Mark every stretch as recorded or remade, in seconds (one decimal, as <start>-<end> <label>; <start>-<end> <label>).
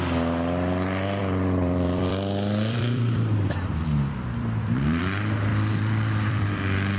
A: 0.0-1.2 recorded; 1.2-5.0 remade; 5.0-5.5 recorded; 5.5-7.0 remade